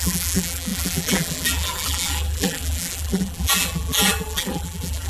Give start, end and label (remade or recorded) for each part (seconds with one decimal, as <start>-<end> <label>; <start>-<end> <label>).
0.0-5.1 remade